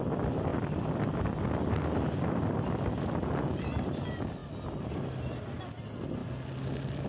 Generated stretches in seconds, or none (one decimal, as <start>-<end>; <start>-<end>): none